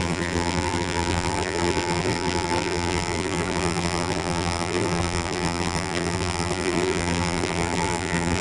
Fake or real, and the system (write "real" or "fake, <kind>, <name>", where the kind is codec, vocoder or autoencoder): fake, vocoder, BigVGAN v2